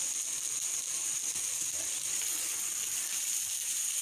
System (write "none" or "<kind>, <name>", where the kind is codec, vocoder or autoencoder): none